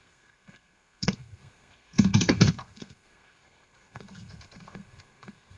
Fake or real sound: fake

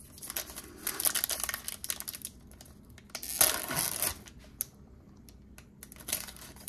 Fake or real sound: real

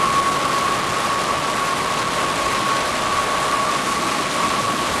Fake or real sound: real